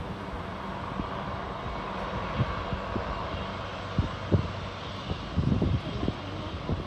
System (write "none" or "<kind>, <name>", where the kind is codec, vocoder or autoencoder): none